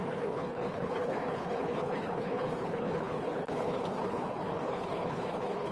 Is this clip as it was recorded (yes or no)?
no